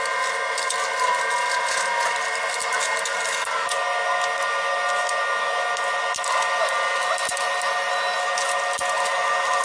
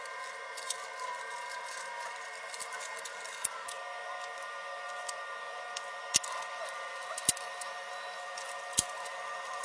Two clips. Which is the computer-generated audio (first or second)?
second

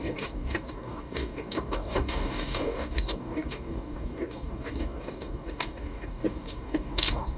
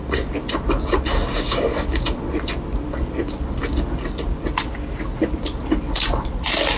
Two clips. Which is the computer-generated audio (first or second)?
first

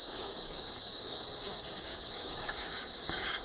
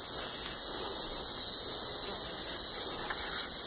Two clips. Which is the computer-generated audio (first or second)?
first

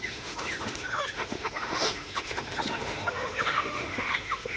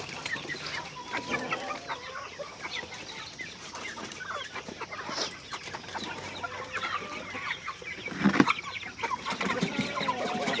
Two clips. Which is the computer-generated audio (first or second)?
first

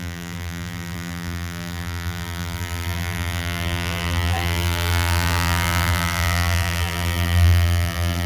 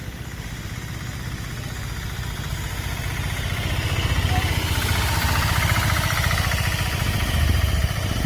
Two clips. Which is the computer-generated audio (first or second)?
first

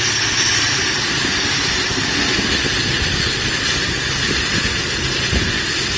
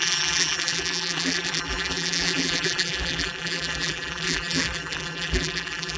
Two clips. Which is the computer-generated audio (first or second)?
second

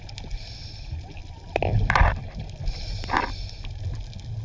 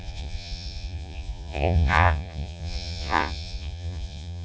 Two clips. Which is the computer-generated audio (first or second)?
second